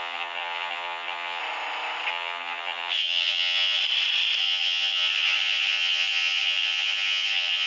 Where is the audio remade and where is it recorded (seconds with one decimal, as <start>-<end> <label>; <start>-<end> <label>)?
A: 0.0-1.4 remade; 1.4-2.1 recorded; 2.1-3.8 remade; 3.8-4.4 recorded; 4.4-7.7 remade